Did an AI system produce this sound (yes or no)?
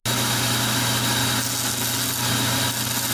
no